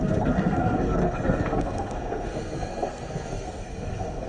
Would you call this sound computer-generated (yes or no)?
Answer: yes